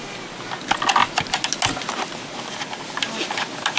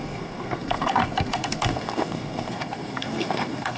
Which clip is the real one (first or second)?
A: first